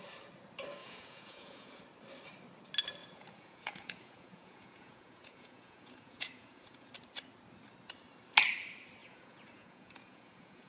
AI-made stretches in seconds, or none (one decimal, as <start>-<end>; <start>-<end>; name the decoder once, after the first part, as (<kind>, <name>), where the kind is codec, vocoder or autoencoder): 0.8-1.8 (vocoder, Vocos); 3.0-6.9; 9.0-10.7